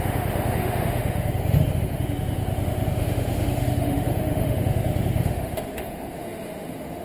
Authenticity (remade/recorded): remade